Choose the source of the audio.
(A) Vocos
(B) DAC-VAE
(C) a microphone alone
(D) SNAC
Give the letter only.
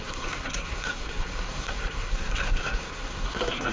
D